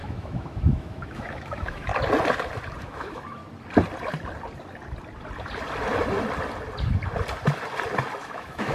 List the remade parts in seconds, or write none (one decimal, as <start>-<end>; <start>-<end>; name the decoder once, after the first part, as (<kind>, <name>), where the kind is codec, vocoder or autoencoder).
0.0-1.9 (autoencoder, DAC-VAE); 2.8-3.4; 8.2-8.7